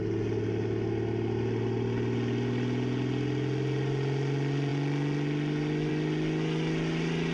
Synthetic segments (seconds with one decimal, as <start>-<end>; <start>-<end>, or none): none